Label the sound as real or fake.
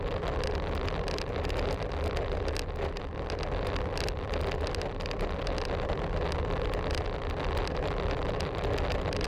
real